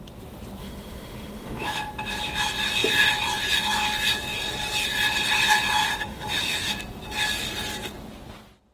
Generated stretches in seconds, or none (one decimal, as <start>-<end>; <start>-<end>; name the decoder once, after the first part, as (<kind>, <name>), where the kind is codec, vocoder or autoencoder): 0.6-1.9 (autoencoder, DAC-VAE); 5.8-6.7